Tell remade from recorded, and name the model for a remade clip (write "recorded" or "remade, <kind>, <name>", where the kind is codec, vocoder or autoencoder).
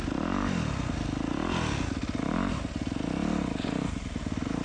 recorded